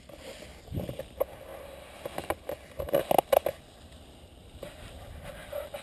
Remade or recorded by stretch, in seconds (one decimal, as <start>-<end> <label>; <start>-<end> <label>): 0.0-0.5 recorded; 0.5-1.0 remade; 1.0-4.4 recorded; 4.4-5.3 remade; 5.3-5.8 recorded